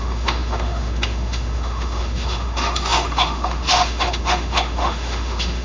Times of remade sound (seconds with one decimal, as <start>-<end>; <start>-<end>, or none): 0.0-5.6